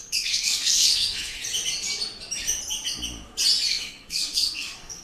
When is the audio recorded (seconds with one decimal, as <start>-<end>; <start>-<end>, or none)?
1.4-3.7